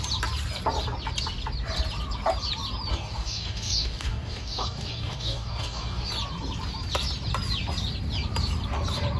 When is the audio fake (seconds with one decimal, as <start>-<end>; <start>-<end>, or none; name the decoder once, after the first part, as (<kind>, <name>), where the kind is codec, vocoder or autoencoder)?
2.9-6.1 (codec, DAC)